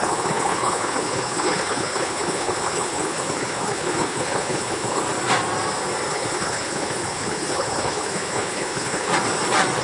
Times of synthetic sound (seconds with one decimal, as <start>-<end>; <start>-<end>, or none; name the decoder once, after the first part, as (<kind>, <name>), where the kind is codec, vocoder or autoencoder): 0.0-5.0 (codec, HILCodec); 6.1-9.1